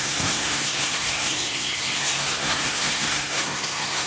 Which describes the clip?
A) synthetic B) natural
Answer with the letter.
A